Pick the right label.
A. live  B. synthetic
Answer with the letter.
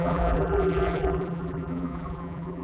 B